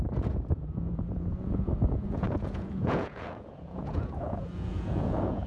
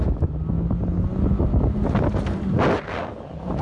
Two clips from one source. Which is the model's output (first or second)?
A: first